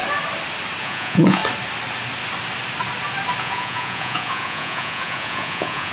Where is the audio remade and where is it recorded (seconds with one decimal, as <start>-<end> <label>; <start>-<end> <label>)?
0.0-0.8 recorded; 0.8-1.4 remade; 1.4-3.4 recorded; 3.4-5.9 remade